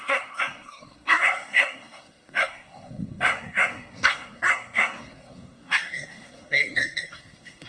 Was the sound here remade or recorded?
remade